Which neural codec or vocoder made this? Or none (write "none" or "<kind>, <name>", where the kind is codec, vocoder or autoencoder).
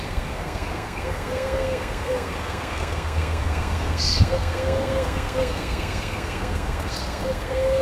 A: codec, SNAC